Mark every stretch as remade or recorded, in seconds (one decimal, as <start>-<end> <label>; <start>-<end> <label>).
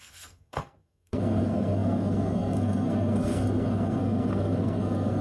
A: 0.0-5.2 remade